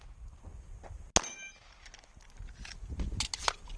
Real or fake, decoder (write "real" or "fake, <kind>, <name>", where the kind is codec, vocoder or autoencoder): real